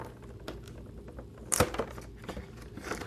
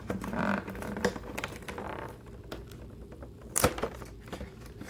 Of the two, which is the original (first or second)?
first